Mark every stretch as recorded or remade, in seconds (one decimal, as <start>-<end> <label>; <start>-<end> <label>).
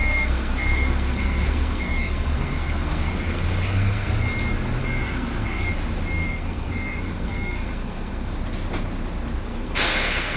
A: 0.0-4.1 remade; 4.1-4.8 recorded; 4.8-5.7 remade; 5.7-6.2 recorded; 6.2-8.3 remade; 8.3-9.5 recorded; 9.5-10.4 remade